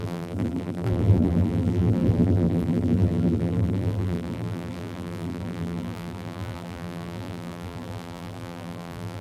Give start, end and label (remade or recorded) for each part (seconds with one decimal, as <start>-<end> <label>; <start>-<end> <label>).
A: 0.0-9.2 remade

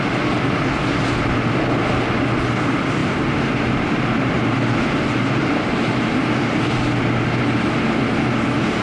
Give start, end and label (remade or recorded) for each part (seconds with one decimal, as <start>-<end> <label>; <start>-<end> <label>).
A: 0.0-3.0 recorded; 3.0-6.7 remade; 6.7-8.8 recorded

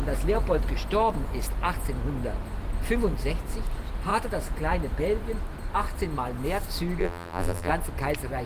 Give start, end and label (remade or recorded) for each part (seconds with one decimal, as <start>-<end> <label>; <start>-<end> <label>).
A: 0.0-7.0 recorded; 7.0-7.7 remade; 7.7-8.5 recorded

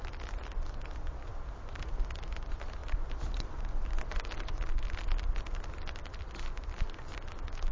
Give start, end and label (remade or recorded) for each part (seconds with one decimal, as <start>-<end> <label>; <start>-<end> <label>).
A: 0.0-2.8 recorded; 2.8-4.4 remade; 4.4-6.1 recorded; 6.1-7.3 remade; 7.3-7.7 recorded

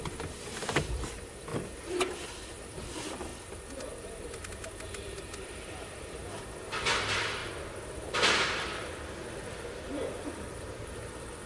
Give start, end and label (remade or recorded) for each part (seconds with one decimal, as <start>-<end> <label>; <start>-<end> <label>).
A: 0.0-1.5 remade; 1.5-2.4 recorded; 2.4-3.3 remade; 3.3-3.8 recorded; 3.8-6.2 remade; 6.2-6.9 recorded; 6.9-11.5 remade

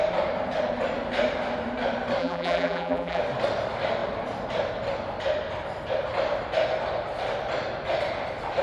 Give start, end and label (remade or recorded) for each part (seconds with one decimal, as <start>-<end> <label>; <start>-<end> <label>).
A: 0.0-2.2 recorded; 2.2-3.2 remade; 3.2-8.6 recorded

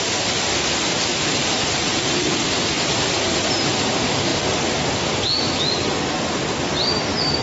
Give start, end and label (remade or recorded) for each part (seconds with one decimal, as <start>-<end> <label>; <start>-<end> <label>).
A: 0.0-7.4 recorded